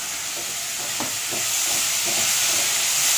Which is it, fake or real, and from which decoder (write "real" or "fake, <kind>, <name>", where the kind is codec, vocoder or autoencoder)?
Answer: real